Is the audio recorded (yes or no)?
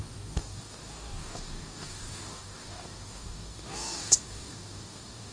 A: no